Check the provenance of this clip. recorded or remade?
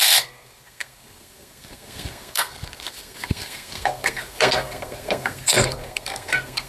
remade